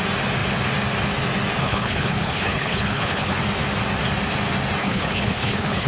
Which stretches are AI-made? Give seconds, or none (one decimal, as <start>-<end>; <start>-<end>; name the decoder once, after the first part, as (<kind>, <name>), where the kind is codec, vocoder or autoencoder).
1.6-3.4 (codec, HILCodec); 4.8-5.9